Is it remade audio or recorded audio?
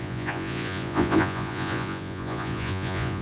remade